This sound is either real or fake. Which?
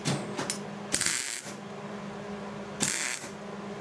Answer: real